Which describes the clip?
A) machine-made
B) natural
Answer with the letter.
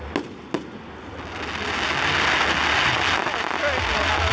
B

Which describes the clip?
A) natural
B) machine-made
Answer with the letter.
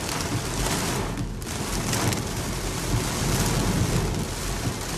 A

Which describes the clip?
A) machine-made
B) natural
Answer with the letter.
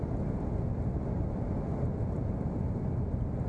B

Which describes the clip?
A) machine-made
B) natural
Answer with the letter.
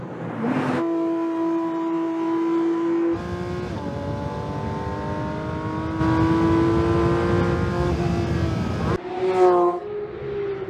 B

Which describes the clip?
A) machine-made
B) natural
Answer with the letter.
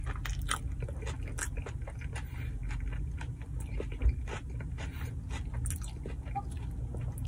B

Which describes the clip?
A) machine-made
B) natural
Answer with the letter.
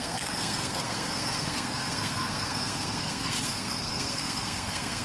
A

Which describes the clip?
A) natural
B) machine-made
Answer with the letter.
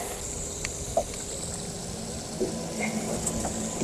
A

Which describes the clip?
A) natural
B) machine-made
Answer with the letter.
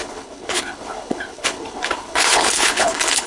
B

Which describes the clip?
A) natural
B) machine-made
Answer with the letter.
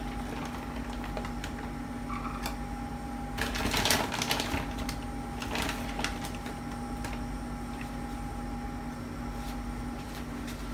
A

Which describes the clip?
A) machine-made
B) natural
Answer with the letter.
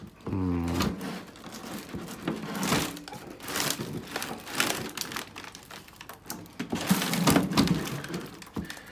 B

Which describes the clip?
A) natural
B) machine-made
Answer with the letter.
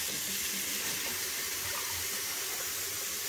A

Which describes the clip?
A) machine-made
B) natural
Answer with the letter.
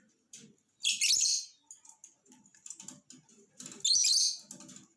B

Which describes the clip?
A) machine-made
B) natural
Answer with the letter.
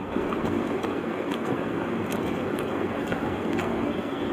A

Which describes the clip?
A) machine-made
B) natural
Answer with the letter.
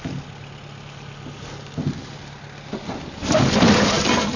B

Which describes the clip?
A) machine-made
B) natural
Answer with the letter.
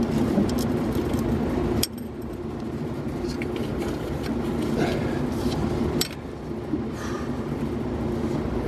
A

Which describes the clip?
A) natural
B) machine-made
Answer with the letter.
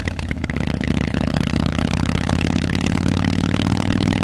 B